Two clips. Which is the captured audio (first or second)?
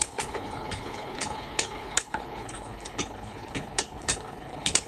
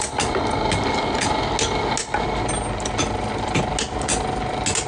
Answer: second